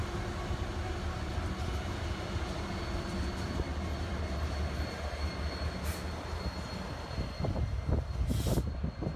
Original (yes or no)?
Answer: yes